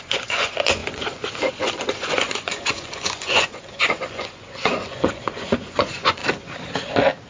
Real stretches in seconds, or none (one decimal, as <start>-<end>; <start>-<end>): 6.2-7.3